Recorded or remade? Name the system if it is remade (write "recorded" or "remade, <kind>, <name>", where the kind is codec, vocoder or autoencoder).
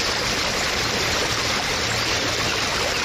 recorded